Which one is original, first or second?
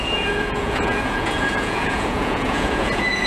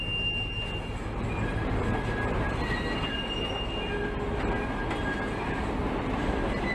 second